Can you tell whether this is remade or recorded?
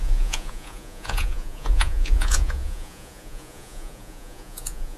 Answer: remade